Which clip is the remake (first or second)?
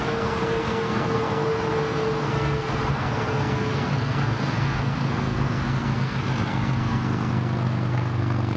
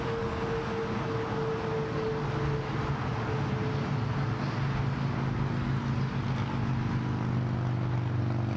first